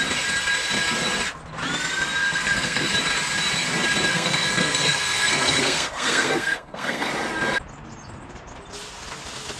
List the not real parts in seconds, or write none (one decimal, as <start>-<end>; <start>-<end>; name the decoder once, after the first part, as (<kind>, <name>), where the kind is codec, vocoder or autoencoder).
2.2-2.9 (codec, SNAC); 4.1-7.1